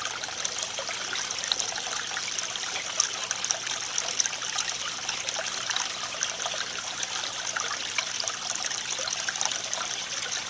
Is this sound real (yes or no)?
yes